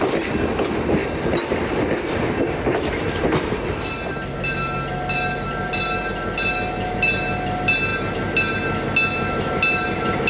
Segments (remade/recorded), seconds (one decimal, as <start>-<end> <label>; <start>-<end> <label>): 0.0-10.3 recorded